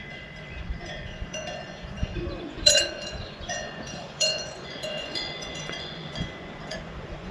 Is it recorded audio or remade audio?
remade